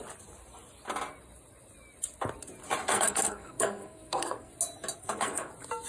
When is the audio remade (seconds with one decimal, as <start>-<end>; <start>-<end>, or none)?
2.9-4.5; 5.0-5.5